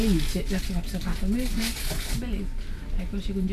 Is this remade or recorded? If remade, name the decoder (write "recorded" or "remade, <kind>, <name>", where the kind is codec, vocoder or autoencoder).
recorded